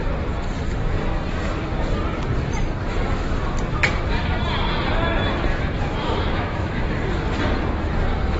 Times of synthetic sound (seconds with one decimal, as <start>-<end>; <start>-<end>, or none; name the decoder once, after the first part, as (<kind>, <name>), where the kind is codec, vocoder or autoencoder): 5.5-6.8 (autoencoder, DAC-VAE)